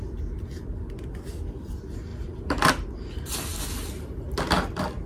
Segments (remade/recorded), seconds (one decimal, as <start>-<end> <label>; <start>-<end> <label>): 0.0-2.1 recorded; 2.1-2.7 remade; 2.7-5.1 recorded